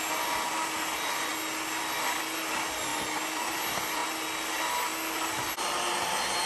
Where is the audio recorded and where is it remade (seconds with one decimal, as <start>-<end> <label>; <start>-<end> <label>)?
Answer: 0.0-6.5 recorded